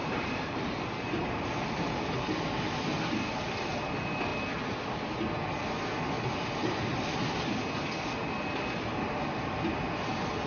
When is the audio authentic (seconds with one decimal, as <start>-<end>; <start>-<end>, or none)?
1.9-10.5